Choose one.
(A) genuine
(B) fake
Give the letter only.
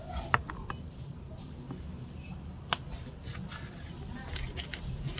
A